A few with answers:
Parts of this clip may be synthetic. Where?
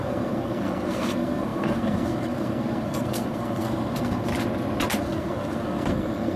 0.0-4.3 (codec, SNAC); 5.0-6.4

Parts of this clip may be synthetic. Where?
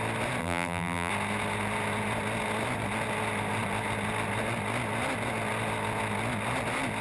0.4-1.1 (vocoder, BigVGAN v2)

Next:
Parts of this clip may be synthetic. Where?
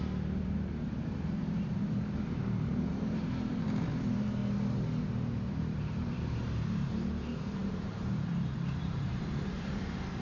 0.0-4.4 (vocoder, BigVGAN v2); 5.6-10.2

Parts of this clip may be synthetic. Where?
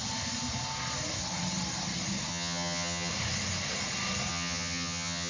2.3-3.1 (vocoder, HiFi-GAN); 4.3-5.3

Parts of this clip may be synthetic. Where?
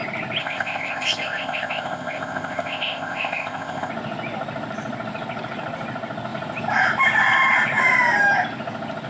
0.4-3.9 (codec, ZipCodec)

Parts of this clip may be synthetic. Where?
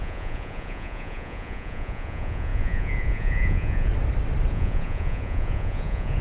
0.0-3.9 (vocoder, Vocos); 4.5-6.2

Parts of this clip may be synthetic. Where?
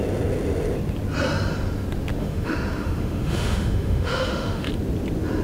2.2-4.7 (autoencoder, DAC-VAE)